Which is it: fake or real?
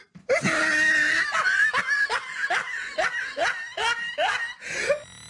real